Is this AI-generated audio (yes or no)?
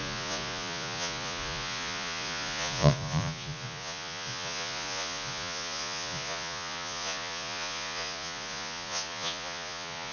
yes